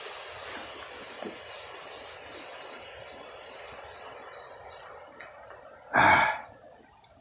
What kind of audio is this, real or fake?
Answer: real